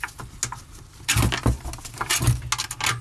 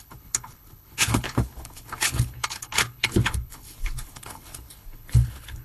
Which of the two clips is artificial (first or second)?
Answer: second